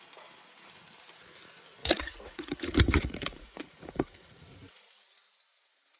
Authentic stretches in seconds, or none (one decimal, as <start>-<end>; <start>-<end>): 0.0-1.8; 4.3-6.0